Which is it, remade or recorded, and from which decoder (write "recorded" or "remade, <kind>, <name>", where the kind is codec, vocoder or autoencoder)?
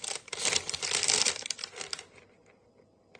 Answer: recorded